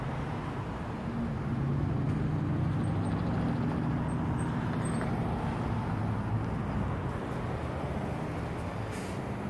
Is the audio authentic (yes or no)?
yes